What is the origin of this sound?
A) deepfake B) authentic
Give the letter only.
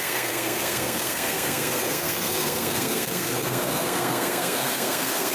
A